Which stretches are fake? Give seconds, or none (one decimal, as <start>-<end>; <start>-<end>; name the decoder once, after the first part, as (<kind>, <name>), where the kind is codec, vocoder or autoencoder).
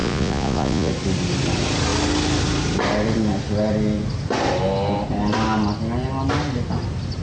0.0-0.9 (vocoder, Vocos)